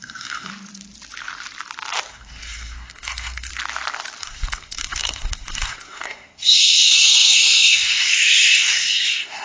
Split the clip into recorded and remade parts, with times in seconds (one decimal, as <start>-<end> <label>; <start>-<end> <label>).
0.0-0.5 remade; 0.5-2.1 recorded; 2.1-3.5 remade; 3.5-4.2 recorded; 4.2-9.4 remade